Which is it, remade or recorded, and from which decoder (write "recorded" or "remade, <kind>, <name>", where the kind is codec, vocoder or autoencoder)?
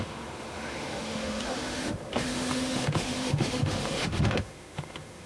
remade, autoencoder, DAC-VAE